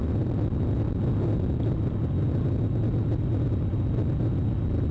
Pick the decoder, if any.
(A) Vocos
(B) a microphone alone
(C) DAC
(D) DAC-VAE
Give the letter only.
B